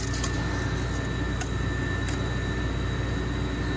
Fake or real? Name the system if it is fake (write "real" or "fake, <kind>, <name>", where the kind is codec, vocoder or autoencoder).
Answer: real